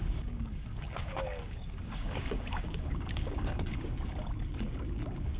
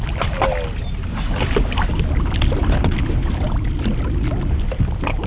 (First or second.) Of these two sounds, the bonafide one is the second